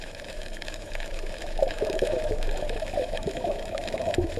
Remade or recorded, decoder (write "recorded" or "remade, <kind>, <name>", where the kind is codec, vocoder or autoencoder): remade, autoencoder, DAC-VAE